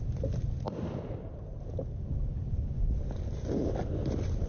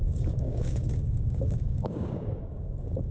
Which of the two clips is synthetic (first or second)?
second